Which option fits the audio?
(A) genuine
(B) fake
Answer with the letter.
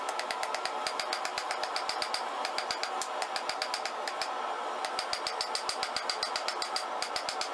A